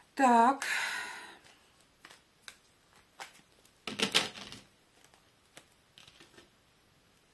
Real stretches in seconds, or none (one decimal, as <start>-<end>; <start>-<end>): 0.0-7.3